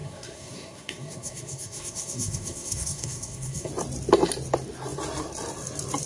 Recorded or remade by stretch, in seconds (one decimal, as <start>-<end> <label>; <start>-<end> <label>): 0.0-3.7 remade; 3.7-6.1 recorded